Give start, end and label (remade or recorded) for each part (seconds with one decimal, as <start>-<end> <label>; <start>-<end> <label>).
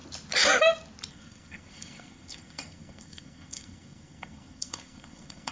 0.0-1.1 recorded; 1.1-5.5 remade